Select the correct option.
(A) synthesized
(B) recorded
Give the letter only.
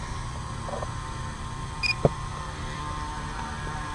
A